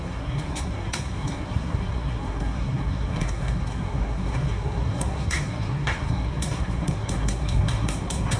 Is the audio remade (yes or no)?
yes